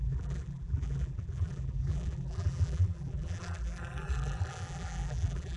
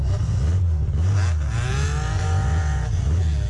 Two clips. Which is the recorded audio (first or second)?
second